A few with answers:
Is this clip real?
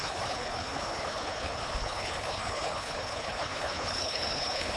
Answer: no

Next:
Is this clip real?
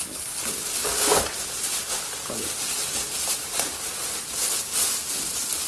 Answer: yes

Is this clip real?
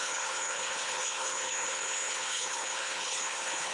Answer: no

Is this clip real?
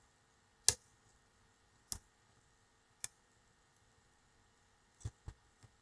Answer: yes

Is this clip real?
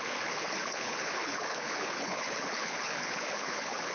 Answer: no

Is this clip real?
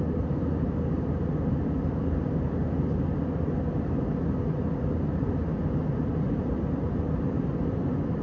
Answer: yes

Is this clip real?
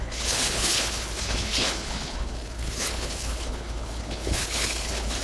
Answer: no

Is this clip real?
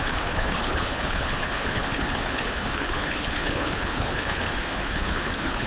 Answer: no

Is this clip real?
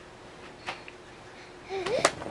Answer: yes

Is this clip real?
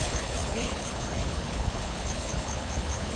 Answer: no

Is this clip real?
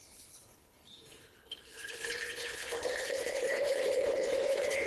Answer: no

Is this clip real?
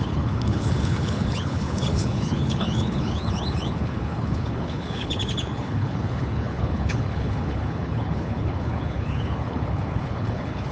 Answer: no